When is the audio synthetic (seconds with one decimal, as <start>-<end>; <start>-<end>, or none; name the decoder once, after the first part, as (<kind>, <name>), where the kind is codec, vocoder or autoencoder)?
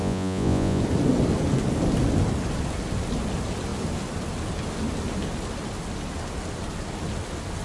0.0-0.8 (vocoder, Vocos)